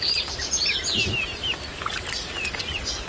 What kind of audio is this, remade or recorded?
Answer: remade